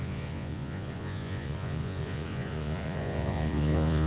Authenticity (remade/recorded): remade